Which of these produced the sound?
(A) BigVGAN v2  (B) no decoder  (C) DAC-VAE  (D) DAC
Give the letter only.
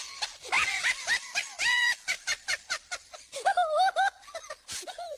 B